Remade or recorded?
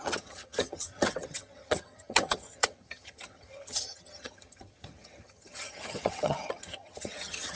remade